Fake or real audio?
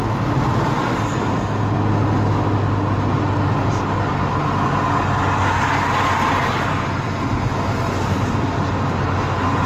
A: real